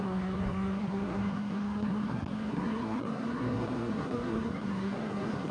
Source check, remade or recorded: remade